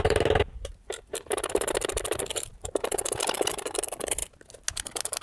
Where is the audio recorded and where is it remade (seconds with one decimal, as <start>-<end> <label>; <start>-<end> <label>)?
0.0-5.2 recorded